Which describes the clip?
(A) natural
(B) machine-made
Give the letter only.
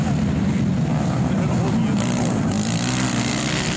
A